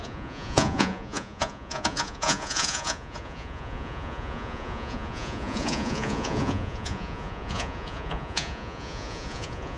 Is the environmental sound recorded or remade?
remade